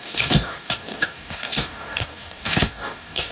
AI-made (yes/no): yes